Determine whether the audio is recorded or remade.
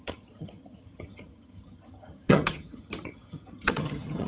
remade